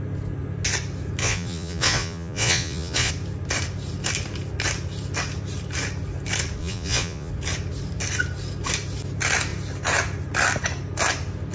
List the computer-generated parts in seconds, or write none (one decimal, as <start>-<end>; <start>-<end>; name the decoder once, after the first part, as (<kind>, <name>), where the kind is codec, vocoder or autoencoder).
1.2-3.1 (vocoder, Vocos); 6.6-7.3